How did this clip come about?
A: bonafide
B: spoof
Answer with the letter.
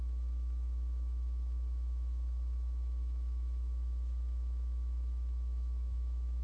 B